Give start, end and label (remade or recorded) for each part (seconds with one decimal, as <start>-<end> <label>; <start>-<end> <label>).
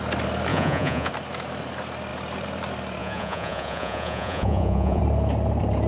0.0-0.5 recorded; 0.5-1.1 remade; 1.1-3.0 recorded; 3.0-5.0 remade; 5.0-5.9 recorded